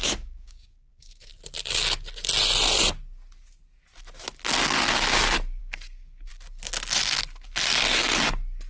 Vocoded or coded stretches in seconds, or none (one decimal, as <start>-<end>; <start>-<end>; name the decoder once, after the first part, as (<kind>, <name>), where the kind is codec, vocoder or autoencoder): 0.0-1.3 (codec, DAC); 5.6-6.3